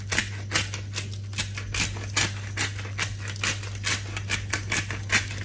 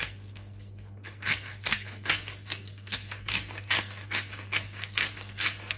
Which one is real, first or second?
first